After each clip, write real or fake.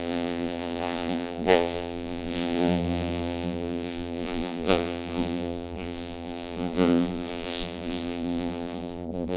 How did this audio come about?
fake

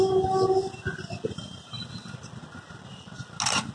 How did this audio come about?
real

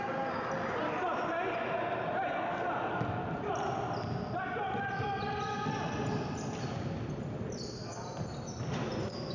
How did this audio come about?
real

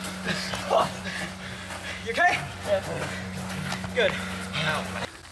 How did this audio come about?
real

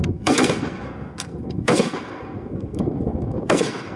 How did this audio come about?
fake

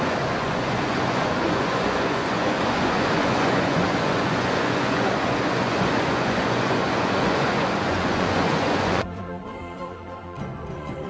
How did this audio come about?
fake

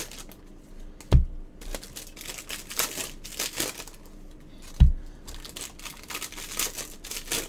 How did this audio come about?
real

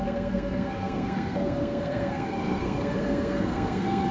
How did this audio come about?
fake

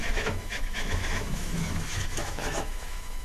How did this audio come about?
fake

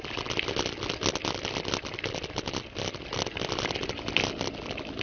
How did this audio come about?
real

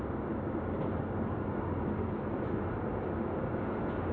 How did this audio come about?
real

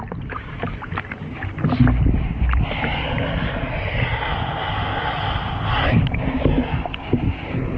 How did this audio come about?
real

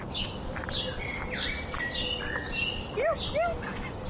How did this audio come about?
real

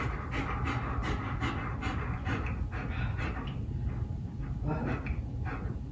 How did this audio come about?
real